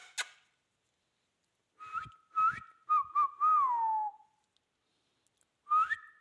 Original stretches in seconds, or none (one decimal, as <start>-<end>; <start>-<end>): 0.0-6.2